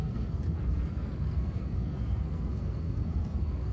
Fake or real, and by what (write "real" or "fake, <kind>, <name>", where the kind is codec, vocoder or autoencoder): fake, codec, SNAC